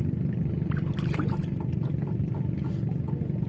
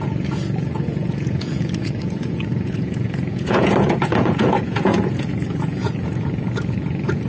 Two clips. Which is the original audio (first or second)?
first